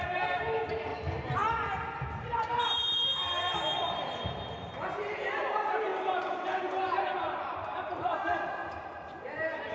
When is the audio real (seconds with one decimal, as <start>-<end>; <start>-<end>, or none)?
0.9-4.6